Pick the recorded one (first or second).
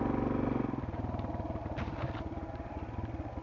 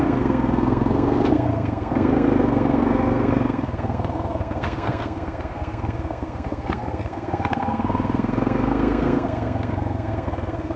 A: first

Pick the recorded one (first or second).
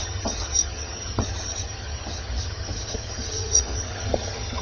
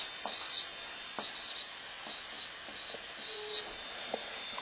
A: second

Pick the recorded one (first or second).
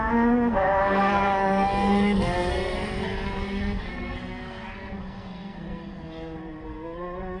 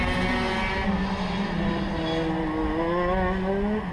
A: second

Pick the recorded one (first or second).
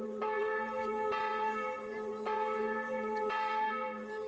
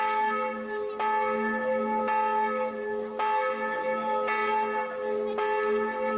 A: second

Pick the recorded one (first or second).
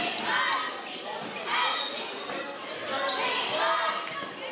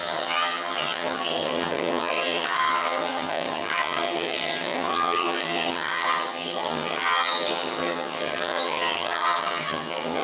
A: first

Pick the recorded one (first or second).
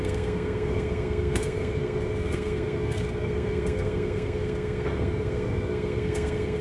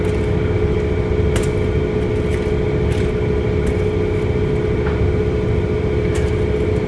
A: second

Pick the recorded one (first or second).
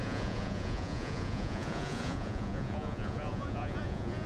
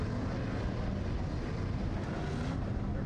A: second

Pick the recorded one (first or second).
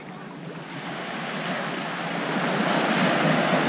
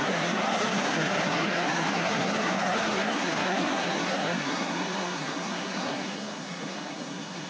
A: first